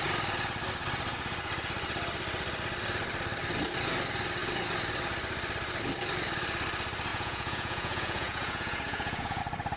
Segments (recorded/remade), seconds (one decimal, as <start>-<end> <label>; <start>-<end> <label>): 0.0-7.1 recorded; 7.1-9.4 remade; 9.4-9.8 recorded